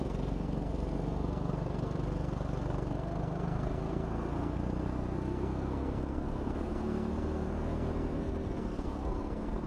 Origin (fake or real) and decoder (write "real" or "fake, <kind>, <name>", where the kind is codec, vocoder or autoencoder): fake, codec, SNAC